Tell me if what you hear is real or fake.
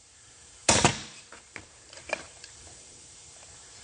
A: fake